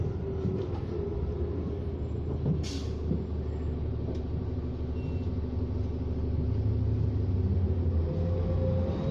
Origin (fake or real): real